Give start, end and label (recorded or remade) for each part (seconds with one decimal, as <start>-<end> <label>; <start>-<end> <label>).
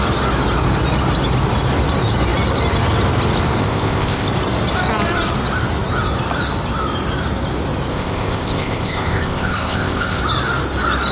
0.0-3.6 recorded; 3.6-4.3 remade; 4.3-7.9 recorded; 7.9-10.2 remade; 10.2-11.1 recorded